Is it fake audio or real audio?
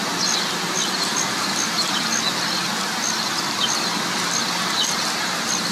real